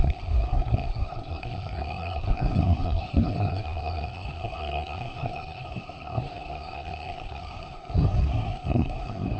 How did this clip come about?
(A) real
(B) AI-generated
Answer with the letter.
B